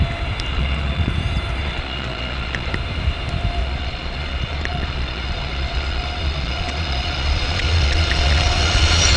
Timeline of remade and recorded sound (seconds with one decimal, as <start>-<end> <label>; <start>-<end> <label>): 0.0-0.5 recorded; 0.5-1.1 remade; 1.1-1.6 recorded; 1.6-2.7 remade; 2.7-3.6 recorded; 3.6-9.2 remade